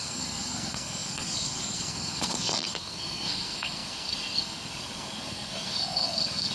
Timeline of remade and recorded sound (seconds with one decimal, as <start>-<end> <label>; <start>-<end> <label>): 0.0-6.5 remade